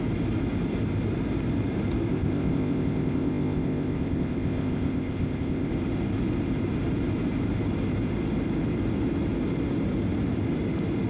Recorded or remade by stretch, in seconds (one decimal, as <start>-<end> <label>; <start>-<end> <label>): 0.0-2.1 recorded; 2.1-5.7 remade; 5.7-11.1 recorded